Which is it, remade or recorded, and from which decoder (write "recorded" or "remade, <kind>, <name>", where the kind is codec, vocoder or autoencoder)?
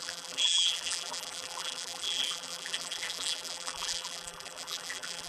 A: remade, vocoder, BigVGAN v2